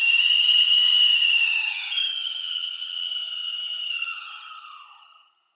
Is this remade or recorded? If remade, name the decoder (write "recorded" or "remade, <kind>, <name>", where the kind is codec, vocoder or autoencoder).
remade, vocoder, HiFi-GAN